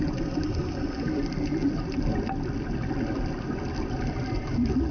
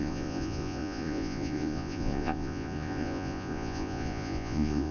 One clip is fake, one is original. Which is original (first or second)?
first